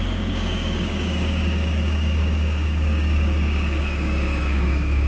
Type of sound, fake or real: fake